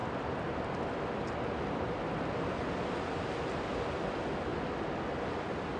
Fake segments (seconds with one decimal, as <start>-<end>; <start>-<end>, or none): none